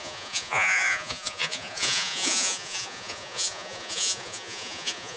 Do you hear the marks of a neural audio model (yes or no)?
yes